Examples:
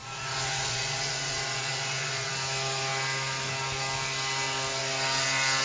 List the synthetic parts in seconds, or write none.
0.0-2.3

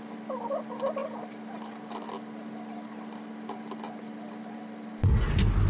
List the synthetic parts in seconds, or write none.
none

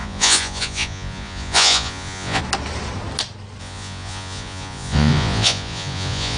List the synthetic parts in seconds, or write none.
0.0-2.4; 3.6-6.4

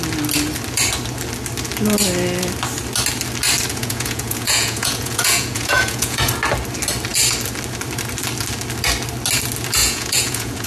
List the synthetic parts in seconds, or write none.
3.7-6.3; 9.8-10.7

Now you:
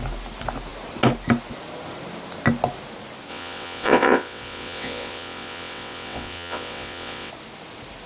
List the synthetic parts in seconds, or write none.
3.3-7.3

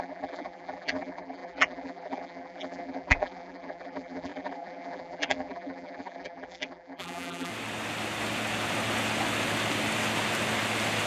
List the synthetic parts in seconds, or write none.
0.0-7.5

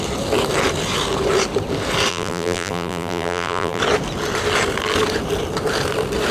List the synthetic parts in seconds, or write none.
2.1-3.8